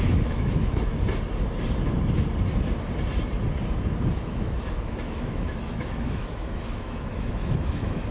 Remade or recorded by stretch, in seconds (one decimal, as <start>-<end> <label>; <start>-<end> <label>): 0.0-0.9 remade; 0.9-4.1 recorded; 4.1-8.1 remade